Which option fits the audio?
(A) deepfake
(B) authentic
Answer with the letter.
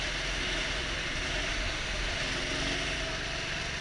B